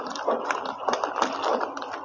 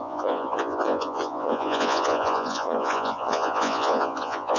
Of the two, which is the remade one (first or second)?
second